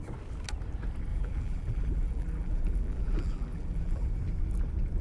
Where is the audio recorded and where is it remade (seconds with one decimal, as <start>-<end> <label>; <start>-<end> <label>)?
0.0-1.1 recorded; 1.1-4.1 remade; 4.1-5.0 recorded